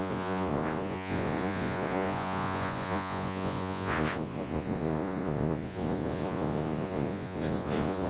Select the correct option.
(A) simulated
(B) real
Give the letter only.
A